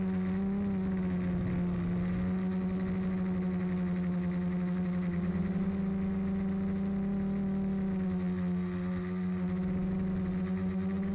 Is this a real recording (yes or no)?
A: yes